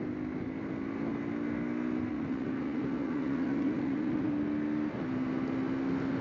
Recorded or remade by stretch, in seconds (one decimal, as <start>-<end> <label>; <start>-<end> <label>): 0.0-2.1 recorded; 2.1-4.3 remade; 4.3-6.2 recorded